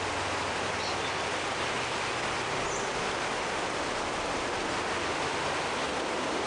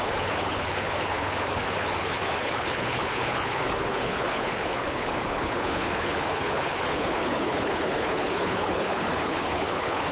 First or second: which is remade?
second